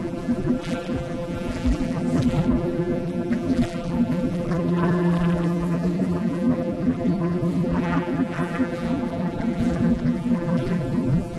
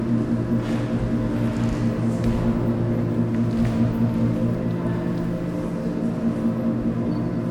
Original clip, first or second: second